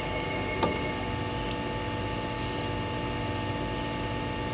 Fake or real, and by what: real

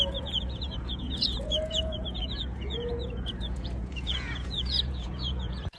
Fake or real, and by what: fake, vocoder, Vocos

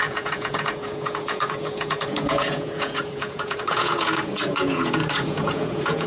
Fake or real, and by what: fake, vocoder, Vocos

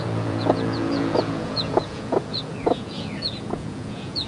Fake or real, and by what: fake, vocoder, Vocos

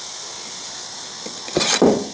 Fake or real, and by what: real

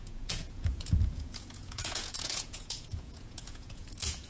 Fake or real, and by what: fake, vocoder, Vocos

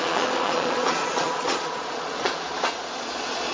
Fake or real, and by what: fake, vocoder, Vocos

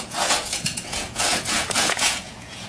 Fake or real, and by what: fake, vocoder, Vocos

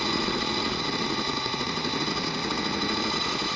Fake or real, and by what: fake, vocoder, Vocos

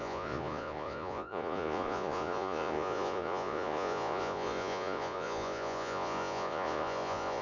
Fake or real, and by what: fake, vocoder, Vocos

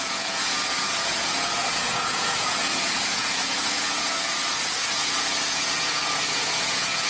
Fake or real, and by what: fake, vocoder, Vocos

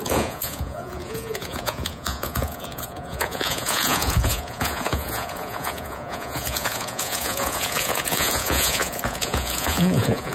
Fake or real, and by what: fake, vocoder, Vocos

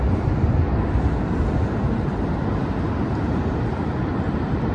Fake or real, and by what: real